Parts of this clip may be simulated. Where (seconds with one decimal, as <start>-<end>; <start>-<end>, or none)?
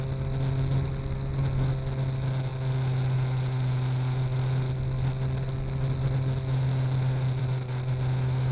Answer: none